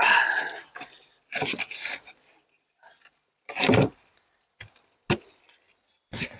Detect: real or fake real